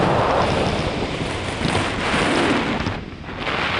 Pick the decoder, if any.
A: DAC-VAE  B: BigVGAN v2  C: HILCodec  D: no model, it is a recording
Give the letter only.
D